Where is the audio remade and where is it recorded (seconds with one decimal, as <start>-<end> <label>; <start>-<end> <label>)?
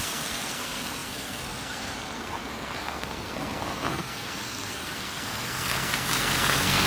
0.0-6.9 remade